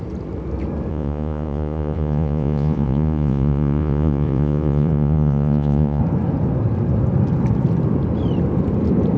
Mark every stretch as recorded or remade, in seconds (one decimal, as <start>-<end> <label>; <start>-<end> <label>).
0.0-0.9 recorded; 0.9-6.0 remade; 6.0-9.2 recorded